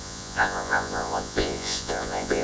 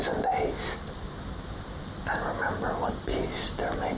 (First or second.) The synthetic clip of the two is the first